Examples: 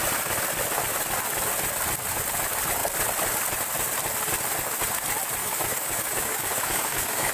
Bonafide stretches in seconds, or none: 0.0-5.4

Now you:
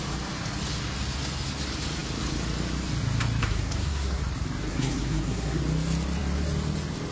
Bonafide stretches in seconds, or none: 0.0-3.4; 4.2-4.7; 5.6-7.1

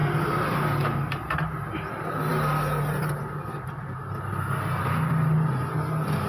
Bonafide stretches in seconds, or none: 0.0-6.3

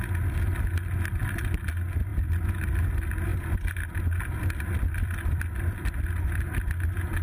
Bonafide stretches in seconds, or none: 0.0-2.1; 2.8-3.3; 6.0-7.2

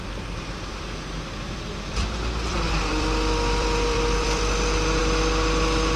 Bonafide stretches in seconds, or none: 5.0-6.0

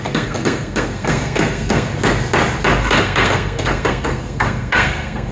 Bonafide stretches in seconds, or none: 1.9-2.8

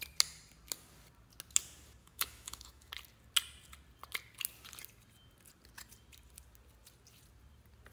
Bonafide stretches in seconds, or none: 0.0-2.0; 2.9-7.9